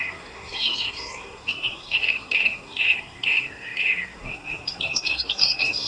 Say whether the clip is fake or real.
fake